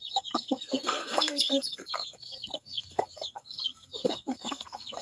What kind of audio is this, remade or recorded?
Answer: remade